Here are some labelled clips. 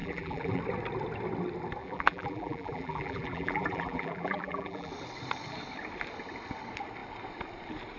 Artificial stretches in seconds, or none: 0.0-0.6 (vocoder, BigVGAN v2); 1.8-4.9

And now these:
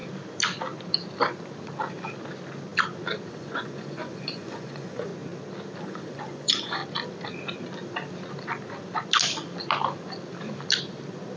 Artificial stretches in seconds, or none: 3.3-5.1 (vocoder, Vocos); 5.8-6.8

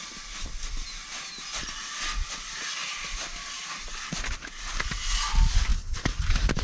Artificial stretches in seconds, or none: 1.0-1.7 (vocoder, BigVGAN v2)

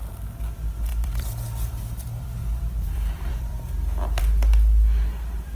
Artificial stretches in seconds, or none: 0.9-4.2 (vocoder, BigVGAN v2)

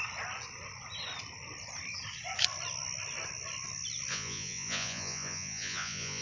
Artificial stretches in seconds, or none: 4.1-6.2 (vocoder, Vocos)

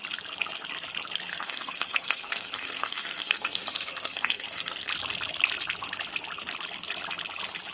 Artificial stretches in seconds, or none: 1.3-4.9 (codec, SNAC)